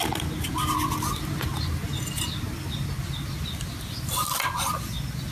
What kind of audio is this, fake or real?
real